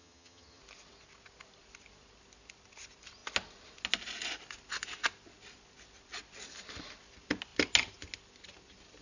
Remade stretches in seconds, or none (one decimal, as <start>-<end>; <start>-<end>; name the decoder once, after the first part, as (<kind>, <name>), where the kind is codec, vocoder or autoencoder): 0.0-0.6 (vocoder, HiFi-GAN)